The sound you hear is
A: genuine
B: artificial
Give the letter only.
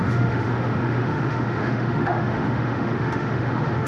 B